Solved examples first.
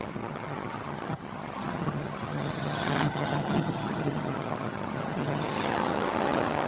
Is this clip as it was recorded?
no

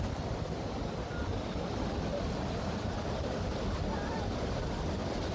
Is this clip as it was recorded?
yes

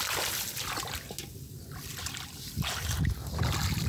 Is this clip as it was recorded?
yes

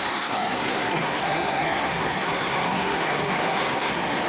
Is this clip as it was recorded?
no